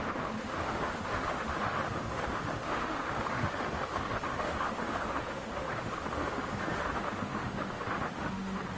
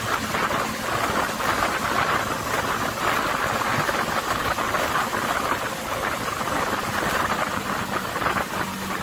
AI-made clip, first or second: first